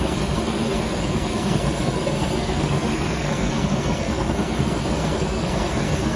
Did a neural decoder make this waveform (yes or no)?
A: yes